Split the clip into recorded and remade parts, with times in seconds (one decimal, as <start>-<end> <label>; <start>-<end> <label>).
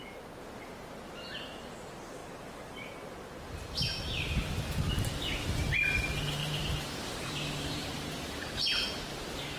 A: 0.0-6.4 recorded; 6.4-8.9 remade; 8.9-9.6 recorded